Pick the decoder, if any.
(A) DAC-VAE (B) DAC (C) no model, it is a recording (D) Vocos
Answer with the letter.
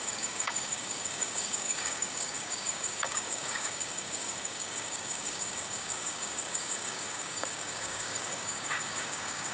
B